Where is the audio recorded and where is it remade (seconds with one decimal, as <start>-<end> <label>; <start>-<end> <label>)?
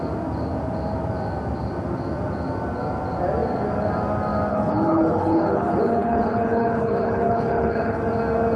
0.0-4.5 recorded; 4.5-8.0 remade; 8.0-8.6 recorded